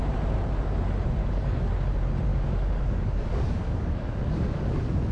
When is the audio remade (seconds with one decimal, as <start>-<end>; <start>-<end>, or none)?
1.2-1.7; 2.3-5.1